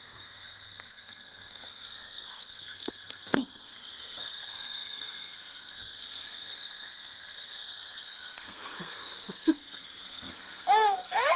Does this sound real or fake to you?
fake